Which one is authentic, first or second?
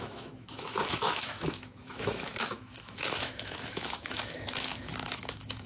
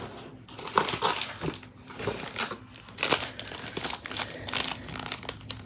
second